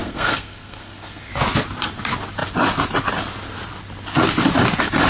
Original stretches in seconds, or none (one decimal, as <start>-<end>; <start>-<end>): 1.3-5.1